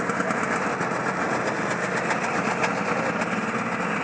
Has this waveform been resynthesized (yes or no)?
no